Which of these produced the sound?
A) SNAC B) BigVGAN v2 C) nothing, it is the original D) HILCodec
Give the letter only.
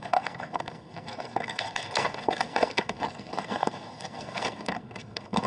A